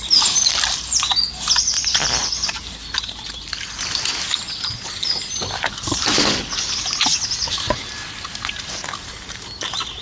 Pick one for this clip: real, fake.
real